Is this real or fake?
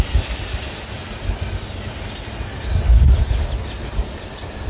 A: real